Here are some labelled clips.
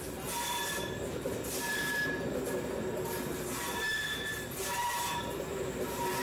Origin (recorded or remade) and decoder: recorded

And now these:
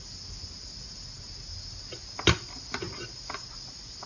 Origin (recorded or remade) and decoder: recorded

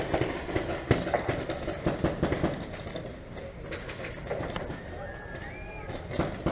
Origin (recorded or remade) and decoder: recorded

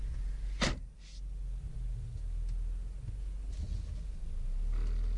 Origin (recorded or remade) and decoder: recorded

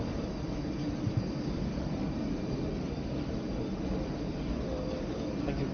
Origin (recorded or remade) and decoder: recorded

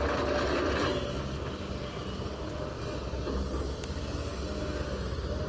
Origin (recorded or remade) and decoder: recorded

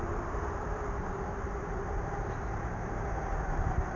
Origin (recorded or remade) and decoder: remade, vocoder, BigVGAN v2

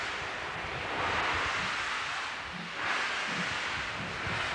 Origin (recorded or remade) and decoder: recorded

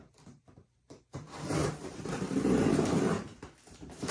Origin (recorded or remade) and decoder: remade, vocoder, BigVGAN v2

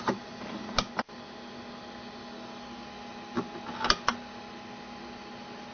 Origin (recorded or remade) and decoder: recorded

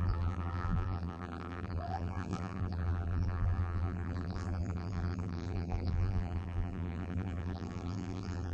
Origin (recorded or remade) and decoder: remade, vocoder, BigVGAN v2